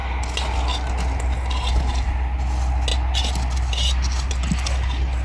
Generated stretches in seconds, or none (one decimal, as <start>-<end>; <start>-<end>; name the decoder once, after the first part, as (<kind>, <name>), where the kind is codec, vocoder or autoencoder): none